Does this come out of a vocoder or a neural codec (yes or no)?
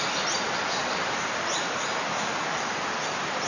no